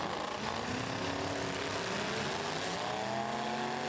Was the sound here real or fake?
real